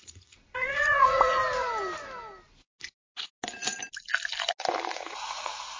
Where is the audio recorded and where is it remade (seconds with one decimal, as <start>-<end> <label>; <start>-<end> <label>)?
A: 0.0-1.4 remade; 1.4-4.9 recorded; 4.9-5.8 remade